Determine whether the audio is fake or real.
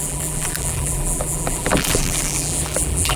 fake